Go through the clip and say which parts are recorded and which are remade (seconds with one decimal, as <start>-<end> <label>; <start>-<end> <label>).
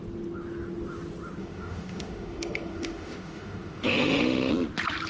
0.0-1.4 recorded; 1.4-4.5 remade; 4.5-5.1 recorded